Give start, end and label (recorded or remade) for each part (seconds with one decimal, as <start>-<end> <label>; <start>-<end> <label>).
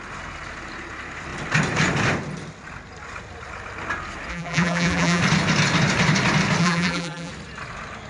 0.0-4.3 recorded; 4.3-5.2 remade; 5.2-6.6 recorded; 6.6-7.3 remade; 7.3-8.1 recorded